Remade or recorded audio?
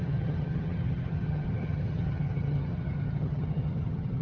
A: remade